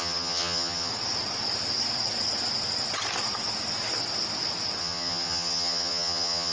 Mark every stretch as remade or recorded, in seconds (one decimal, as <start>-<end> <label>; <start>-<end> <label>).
0.0-0.9 remade; 0.9-4.8 recorded; 4.8-6.5 remade